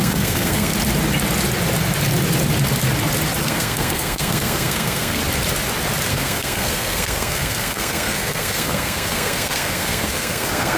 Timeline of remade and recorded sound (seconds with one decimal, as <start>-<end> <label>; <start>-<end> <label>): 0.0-0.7 remade; 0.7-3.4 recorded; 3.4-5.2 remade; 5.2-6.1 recorded; 6.1-10.8 remade